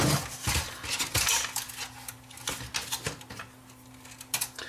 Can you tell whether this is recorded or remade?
recorded